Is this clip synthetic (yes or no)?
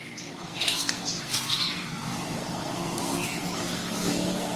yes